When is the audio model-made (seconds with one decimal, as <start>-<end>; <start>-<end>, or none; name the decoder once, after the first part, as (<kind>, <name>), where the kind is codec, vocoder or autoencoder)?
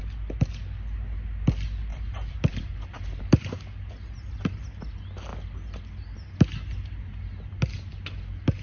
1.9-3.5 (vocoder, BigVGAN v2)